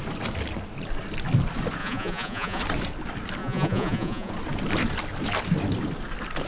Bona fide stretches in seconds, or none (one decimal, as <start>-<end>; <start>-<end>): 0.0-1.8; 2.6-3.4; 4.3-6.5